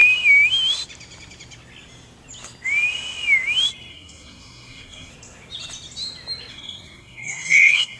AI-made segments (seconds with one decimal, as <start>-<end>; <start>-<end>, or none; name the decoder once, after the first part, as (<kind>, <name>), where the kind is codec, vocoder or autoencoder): 3.9-5.1 (codec, SNAC); 6.5-8.0